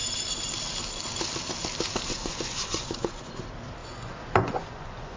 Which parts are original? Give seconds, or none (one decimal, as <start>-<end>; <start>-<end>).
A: 0.0-2.1; 3.4-3.8